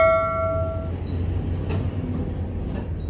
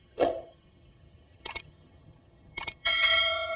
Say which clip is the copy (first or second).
second